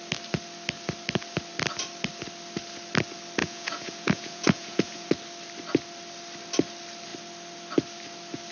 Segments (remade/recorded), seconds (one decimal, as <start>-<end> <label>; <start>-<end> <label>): 0.0-3.4 recorded; 3.4-5.1 remade; 5.1-8.5 recorded